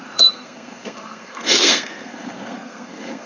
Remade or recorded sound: remade